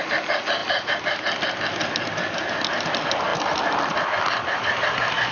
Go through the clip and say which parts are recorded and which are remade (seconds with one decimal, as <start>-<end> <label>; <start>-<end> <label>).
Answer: 0.0-5.3 recorded